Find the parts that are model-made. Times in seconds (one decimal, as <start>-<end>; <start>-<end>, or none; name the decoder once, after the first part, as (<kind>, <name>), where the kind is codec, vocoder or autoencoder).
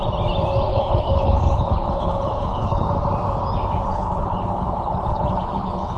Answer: 0.7-2.9 (codec, HILCodec); 3.9-6.0